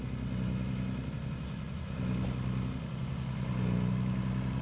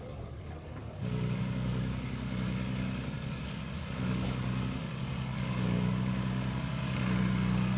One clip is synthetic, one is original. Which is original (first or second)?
first